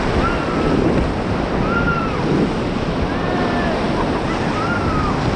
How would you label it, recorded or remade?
recorded